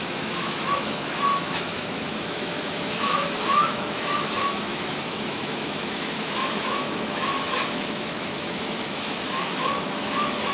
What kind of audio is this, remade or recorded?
remade